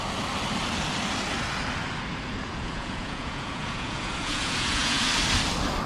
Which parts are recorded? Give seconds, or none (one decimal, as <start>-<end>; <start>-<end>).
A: 0.0-2.4; 5.1-5.9